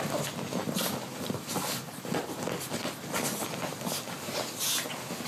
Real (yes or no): yes